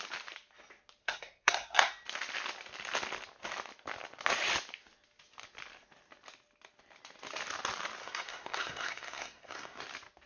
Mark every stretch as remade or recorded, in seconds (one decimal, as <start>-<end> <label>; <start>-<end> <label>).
0.0-1.0 recorded; 1.0-1.9 remade; 1.9-8.0 recorded; 8.0-9.8 remade; 9.8-10.3 recorded